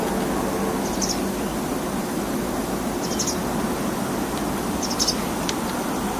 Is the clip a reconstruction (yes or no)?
no